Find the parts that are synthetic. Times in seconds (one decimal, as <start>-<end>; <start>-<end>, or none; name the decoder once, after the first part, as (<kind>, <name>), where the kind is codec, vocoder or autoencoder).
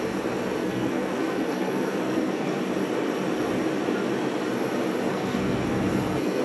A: 0.6-2.6 (codec, SNAC); 5.1-6.4